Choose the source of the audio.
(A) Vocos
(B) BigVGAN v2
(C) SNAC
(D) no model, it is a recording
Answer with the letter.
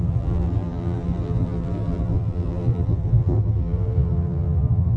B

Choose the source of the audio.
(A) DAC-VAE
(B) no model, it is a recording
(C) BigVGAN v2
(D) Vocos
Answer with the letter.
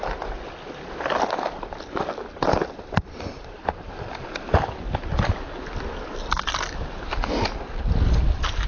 B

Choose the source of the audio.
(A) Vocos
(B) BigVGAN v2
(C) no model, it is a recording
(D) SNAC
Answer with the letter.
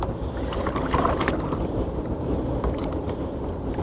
B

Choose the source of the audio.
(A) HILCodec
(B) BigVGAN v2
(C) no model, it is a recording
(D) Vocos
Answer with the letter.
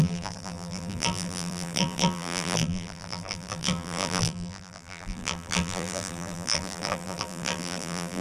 B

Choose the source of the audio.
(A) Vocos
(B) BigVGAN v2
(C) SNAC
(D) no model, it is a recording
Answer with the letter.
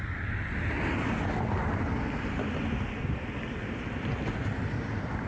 B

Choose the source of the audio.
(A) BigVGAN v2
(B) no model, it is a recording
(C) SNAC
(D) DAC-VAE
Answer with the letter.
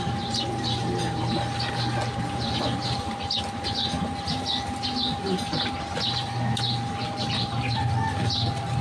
B